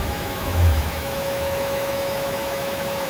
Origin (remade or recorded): remade